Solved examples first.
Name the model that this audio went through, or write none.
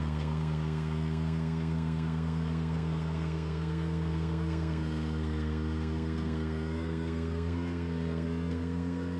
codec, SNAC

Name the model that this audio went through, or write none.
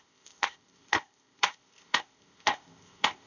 codec, ZipCodec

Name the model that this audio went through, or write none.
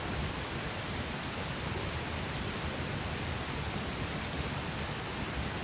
none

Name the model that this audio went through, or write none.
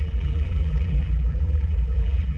vocoder, BigVGAN v2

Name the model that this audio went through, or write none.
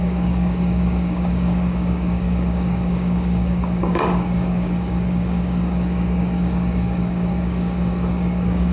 codec, DAC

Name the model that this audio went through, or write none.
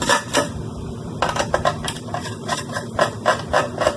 vocoder, BigVGAN v2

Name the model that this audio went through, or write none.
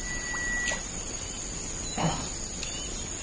none